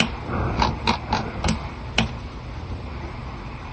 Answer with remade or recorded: recorded